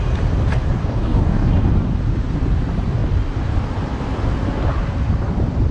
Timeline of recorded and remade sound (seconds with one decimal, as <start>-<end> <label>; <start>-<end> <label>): 0.0-0.8 recorded; 0.8-1.5 remade; 1.5-5.7 recorded